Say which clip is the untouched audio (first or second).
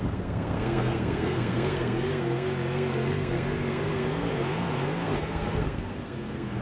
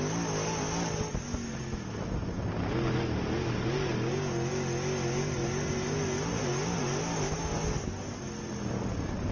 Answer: second